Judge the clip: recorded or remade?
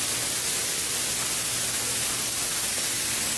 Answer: recorded